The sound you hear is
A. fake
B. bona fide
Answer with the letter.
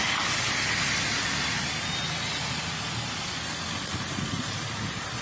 B